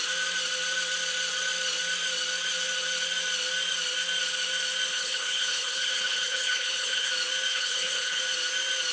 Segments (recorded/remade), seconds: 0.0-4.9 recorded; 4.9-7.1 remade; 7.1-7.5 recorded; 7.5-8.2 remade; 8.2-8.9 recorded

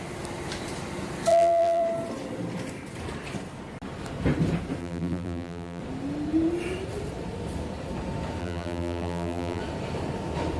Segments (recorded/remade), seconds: 0.0-1.3 recorded; 1.3-1.8 remade; 1.8-4.8 recorded; 4.8-5.8 remade; 5.8-8.4 recorded; 8.4-9.6 remade; 9.6-10.6 recorded